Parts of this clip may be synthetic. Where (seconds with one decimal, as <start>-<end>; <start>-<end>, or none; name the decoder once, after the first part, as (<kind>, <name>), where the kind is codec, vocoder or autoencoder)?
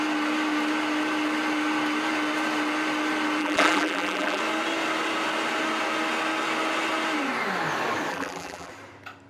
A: 3.4-4.4 (vocoder, BigVGAN v2); 8.1-8.7